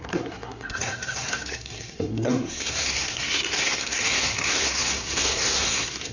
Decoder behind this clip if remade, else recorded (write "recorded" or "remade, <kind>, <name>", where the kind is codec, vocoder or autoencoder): remade, codec, SNAC